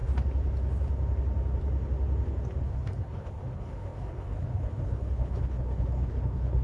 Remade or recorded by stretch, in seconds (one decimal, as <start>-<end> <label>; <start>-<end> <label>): 0.0-2.6 recorded; 2.6-6.6 remade